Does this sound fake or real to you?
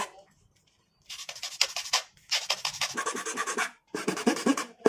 fake